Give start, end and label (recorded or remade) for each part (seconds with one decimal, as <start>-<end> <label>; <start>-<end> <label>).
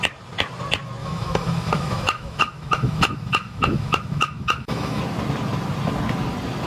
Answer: 0.0-1.0 recorded; 1.0-5.0 remade; 5.0-6.7 recorded